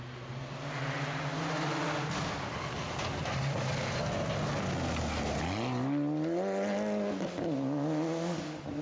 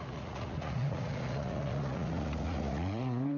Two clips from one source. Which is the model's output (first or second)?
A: second